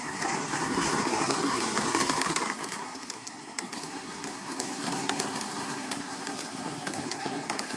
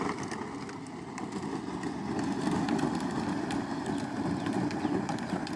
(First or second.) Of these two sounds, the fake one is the first